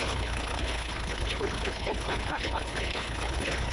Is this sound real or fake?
fake